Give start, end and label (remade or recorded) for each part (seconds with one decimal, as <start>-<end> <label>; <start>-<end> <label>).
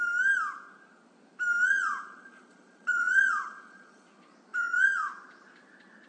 0.0-1.6 recorded; 1.6-4.1 remade; 4.1-4.5 recorded; 4.5-5.1 remade; 5.1-6.1 recorded